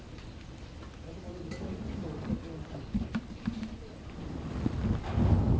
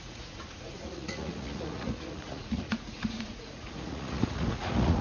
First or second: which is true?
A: first